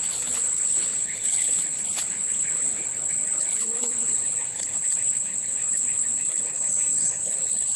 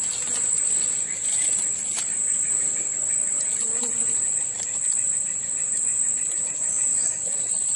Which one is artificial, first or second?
first